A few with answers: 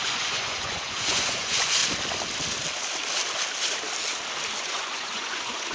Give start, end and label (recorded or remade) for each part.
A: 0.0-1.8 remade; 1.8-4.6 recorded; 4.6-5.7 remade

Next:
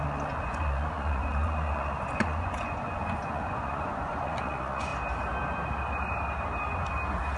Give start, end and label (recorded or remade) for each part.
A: 0.0-4.9 remade; 4.9-7.4 recorded